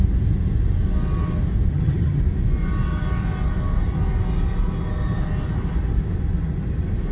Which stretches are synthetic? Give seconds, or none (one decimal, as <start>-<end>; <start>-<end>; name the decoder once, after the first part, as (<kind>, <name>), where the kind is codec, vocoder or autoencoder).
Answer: 1.7-2.2 (vocoder, HiFi-GAN)

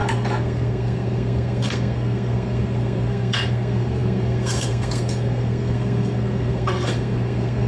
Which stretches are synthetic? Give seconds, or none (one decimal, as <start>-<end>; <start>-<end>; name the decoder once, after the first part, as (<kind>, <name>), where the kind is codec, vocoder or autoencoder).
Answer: 0.0-7.7 (codec, SNAC)

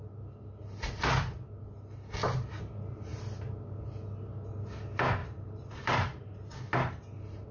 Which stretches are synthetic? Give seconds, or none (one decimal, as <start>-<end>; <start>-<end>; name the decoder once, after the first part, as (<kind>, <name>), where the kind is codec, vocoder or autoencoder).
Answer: 5.2-6.5 (vocoder, BigVGAN v2)

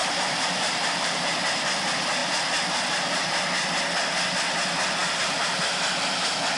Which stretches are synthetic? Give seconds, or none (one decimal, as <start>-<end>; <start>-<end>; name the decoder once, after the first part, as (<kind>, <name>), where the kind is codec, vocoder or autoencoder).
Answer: 0.0-1.3 (vocoder, BigVGAN v2)

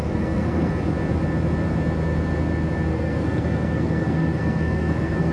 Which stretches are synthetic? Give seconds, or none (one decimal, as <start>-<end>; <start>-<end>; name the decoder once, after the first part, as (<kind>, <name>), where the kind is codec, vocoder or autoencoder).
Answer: 0.0-0.7 (codec, SNAC); 2.9-5.3